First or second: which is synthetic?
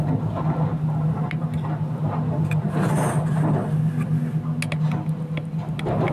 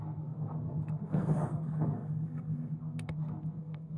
second